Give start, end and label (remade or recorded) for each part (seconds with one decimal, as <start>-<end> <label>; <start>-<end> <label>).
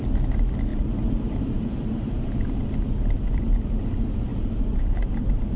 0.0-0.7 recorded; 0.7-1.4 remade; 1.4-4.3 recorded; 4.3-5.6 remade